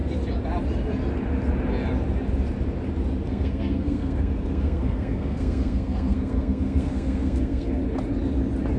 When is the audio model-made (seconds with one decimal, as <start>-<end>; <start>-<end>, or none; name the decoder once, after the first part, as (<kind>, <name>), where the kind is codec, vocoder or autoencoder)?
3.3-7.8 (codec, SNAC)